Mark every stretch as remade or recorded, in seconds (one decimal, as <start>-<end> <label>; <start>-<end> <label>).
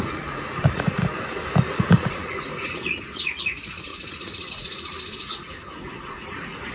0.0-1.0 remade; 1.0-1.7 recorded; 1.7-6.7 remade